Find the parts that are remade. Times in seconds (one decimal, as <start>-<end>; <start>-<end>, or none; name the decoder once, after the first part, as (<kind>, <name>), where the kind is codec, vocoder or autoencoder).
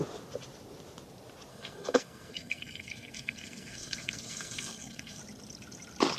1.5-5.2 (codec, SNAC)